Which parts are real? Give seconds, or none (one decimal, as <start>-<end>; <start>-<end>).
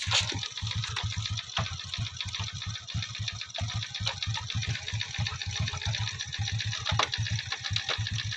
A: 0.0-8.4